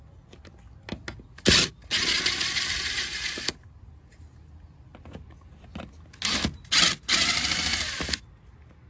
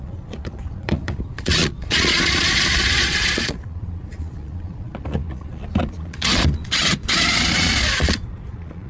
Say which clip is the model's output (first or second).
second